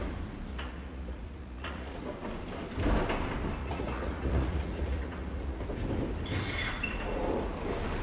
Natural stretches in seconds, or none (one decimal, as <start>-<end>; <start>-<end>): 0.0-0.5; 2.1-3.6; 5.6-8.0